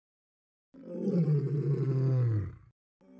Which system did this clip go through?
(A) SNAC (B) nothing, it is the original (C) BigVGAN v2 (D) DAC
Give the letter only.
B